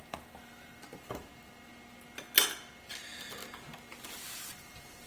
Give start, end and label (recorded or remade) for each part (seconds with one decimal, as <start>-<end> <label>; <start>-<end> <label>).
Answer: 0.0-1.3 remade; 1.3-4.1 recorded; 4.1-5.1 remade